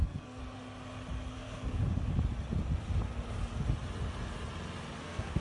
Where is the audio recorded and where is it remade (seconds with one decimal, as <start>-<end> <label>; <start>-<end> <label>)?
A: 0.0-0.4 remade; 0.4-1.3 recorded; 1.3-1.8 remade; 1.8-5.0 recorded; 5.0-5.4 remade